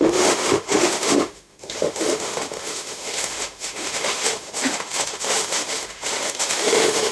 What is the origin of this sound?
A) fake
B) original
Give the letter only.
A